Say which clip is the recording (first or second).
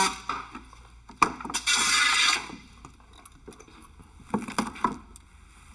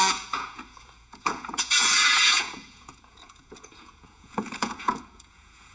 first